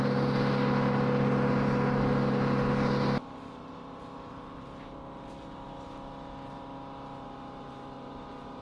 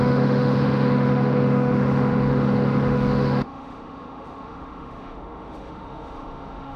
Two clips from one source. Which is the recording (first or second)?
first